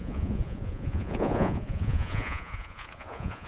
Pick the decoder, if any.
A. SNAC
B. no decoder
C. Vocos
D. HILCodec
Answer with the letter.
C